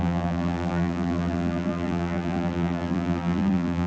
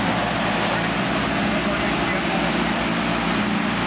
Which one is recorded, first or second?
second